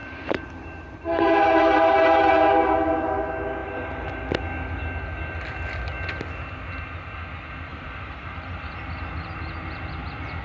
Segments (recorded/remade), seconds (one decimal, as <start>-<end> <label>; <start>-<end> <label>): 0.0-2.2 remade; 2.2-3.6 recorded; 3.6-4.2 remade; 4.2-7.7 recorded; 7.7-8.8 remade; 8.8-10.4 recorded